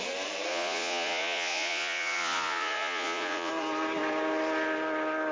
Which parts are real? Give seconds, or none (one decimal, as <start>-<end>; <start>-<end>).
0.0-0.5; 3.5-5.3